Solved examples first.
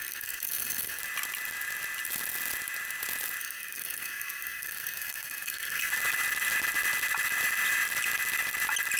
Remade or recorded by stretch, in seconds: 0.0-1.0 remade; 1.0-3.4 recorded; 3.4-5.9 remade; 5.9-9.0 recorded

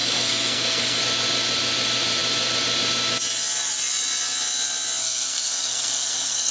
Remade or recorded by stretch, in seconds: 0.0-1.0 remade; 1.0-5.0 recorded; 5.0-6.5 remade

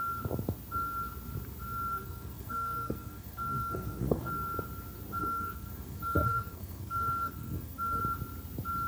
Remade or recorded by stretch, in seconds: 0.0-1.9 recorded; 1.9-4.3 remade; 4.3-5.2 recorded; 5.2-8.0 remade; 8.0-8.9 recorded

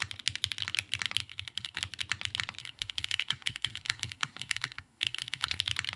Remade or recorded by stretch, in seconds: 0.0-1.2 recorded; 1.2-1.8 remade; 1.8-2.6 recorded; 2.6-5.6 remade; 5.6-6.0 recorded

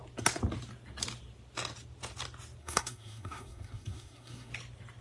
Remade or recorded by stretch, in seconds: 0.0-2.6 recorded; 2.6-4.5 remade; 4.5-5.0 recorded

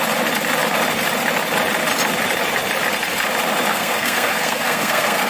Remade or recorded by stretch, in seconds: 0.0-3.7 recorded; 3.7-5.3 remade